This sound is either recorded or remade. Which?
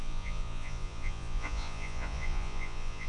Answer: remade